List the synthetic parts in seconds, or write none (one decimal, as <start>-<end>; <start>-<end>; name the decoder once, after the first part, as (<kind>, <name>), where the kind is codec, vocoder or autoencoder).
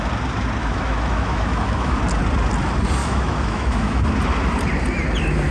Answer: 0.6-2.0 (autoencoder, DAC-VAE); 3.0-4.0